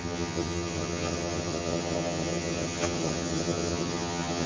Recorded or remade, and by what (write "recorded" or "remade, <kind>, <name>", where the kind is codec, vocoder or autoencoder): remade, vocoder, HiFi-GAN